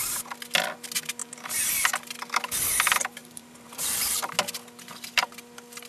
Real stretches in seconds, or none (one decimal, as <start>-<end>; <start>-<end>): 0.0-1.2; 1.7-3.2; 4.3-5.9